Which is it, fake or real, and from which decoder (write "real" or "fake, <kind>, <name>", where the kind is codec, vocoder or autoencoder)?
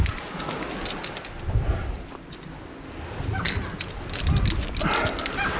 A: real